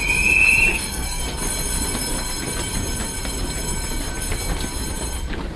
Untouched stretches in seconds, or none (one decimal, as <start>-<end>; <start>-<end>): 0.0-0.7; 1.2-5.6